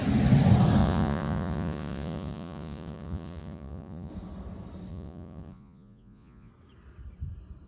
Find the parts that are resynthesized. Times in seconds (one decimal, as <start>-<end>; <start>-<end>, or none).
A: 0.8-4.1; 4.9-6.5